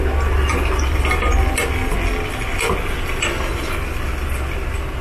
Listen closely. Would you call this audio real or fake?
real